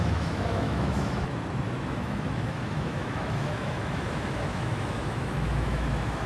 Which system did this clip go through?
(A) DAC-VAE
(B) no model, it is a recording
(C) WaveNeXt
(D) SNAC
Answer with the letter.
A